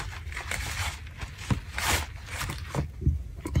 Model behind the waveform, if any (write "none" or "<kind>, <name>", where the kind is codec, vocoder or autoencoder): none